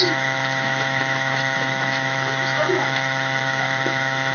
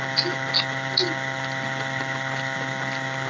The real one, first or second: second